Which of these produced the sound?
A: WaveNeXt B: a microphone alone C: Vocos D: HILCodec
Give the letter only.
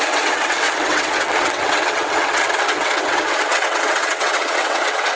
A